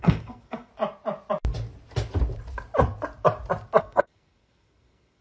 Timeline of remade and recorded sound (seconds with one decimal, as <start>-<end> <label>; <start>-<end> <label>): 0.0-0.7 remade; 0.7-3.8 recorded; 3.8-5.2 remade